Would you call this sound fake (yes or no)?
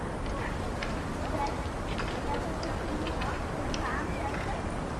yes